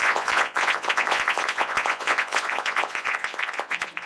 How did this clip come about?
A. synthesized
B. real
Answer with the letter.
A